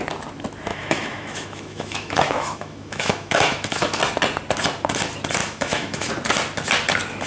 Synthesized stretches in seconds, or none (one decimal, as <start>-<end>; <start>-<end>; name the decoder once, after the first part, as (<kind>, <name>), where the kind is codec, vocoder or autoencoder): 0.7-4.0 (autoencoder, DAC-VAE); 5.4-6.1